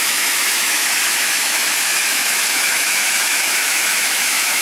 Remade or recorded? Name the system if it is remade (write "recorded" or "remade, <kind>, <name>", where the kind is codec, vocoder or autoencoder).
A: remade, autoencoder, DAC-VAE